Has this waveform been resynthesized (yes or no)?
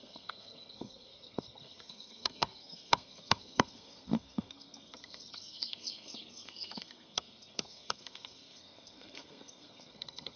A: yes